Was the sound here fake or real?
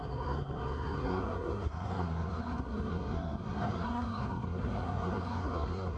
fake